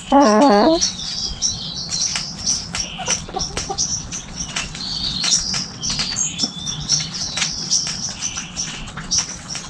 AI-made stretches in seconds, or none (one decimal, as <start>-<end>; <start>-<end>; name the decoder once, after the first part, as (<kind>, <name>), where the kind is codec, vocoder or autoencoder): 0.0-2.1 (vocoder, WaveNeXt); 3.2-6.2; 6.7-9.7